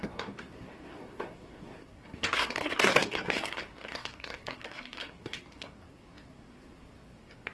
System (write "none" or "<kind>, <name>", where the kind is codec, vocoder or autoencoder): codec, SNAC